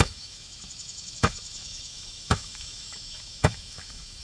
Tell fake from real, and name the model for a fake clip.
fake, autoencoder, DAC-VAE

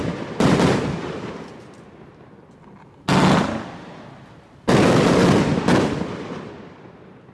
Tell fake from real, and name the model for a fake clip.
real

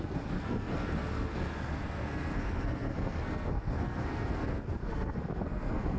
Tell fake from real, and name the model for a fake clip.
fake, codec, SNAC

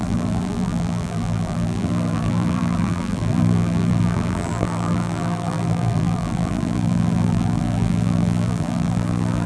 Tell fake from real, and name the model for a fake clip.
fake, vocoder, BigVGAN v2